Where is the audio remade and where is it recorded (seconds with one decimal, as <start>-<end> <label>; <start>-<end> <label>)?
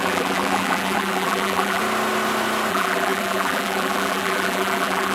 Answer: 0.0-1.8 remade; 1.8-2.7 recorded; 2.7-5.1 remade